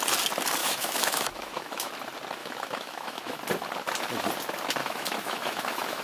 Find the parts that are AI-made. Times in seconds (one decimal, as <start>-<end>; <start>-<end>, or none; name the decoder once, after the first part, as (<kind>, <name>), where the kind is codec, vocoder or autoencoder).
0.6-1.9 (autoencoder, DAC-VAE); 2.4-3.4; 4.8-6.0